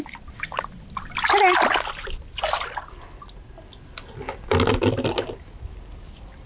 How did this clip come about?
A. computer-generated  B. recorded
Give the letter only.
B